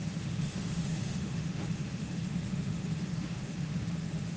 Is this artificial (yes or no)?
yes